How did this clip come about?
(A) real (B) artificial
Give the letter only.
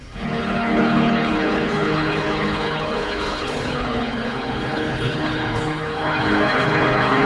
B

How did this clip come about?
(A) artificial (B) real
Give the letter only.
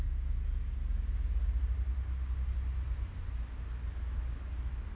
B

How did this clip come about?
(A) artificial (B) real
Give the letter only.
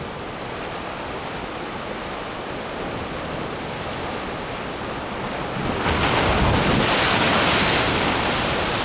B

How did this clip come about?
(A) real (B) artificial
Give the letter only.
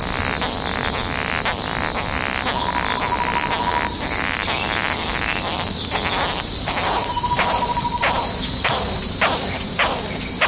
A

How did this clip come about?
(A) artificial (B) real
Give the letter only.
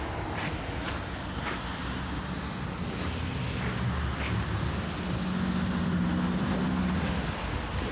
B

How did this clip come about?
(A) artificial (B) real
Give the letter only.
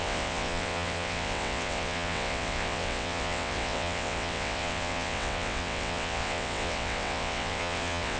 A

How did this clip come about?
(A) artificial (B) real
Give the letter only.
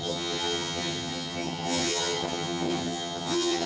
A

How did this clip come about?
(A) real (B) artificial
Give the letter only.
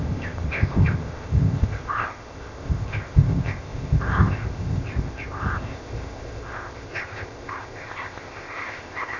B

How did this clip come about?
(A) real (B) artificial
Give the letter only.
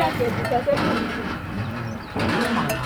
B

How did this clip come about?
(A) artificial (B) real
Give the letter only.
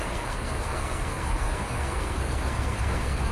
A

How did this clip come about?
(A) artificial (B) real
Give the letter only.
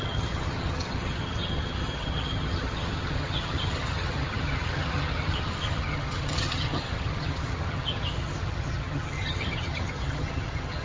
A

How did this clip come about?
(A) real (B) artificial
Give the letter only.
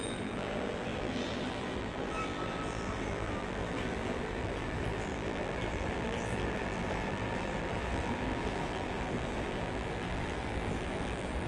B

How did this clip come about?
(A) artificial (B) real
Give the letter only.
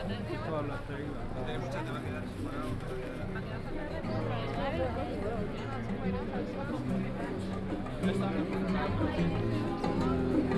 B